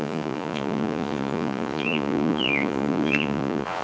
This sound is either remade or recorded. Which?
remade